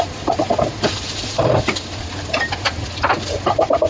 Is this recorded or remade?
recorded